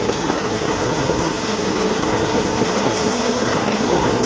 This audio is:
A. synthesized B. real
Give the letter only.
A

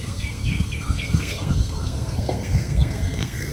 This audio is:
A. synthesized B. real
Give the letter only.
A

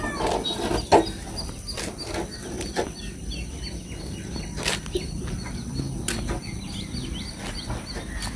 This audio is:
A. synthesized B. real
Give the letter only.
B